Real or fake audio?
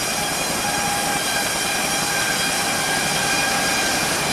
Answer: real